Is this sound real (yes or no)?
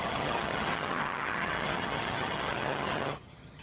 no